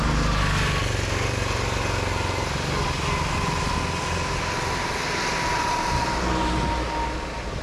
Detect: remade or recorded recorded